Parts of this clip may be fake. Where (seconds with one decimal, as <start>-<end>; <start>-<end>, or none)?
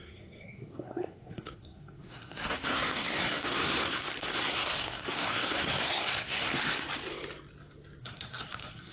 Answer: 0.0-6.7; 8.0-8.9